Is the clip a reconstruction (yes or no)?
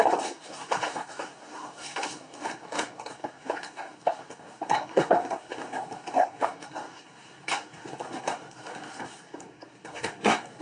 yes